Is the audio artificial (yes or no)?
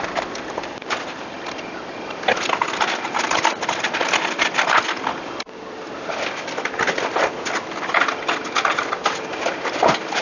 no